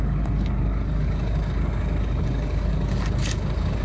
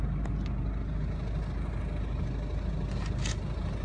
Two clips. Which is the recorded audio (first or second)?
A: second